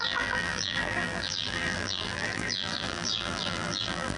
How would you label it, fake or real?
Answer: fake